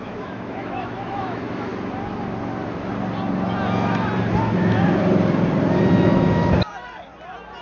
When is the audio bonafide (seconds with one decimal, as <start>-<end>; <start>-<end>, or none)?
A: 1.7-6.0; 6.4-7.6